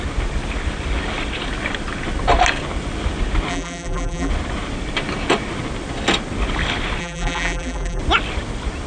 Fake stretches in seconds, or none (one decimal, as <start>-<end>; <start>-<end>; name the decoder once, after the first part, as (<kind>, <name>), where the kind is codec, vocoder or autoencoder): 3.5-4.3 (vocoder, BigVGAN v2); 7.0-8.0